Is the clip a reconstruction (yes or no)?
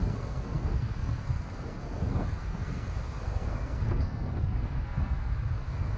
yes